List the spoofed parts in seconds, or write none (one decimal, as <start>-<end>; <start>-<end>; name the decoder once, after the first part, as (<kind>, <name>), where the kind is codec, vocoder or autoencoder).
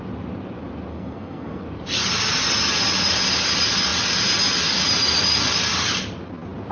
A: 0.9-1.6 (codec, SNAC)